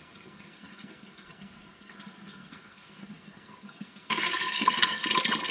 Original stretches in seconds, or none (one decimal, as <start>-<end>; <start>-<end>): 5.0-5.5